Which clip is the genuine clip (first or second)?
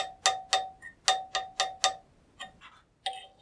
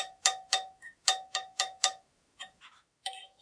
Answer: first